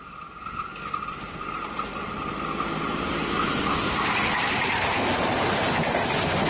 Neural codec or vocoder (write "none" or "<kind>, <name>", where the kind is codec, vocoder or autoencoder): none